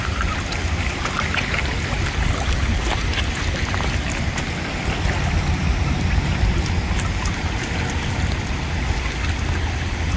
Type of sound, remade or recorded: recorded